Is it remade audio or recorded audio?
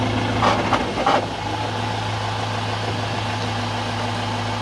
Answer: recorded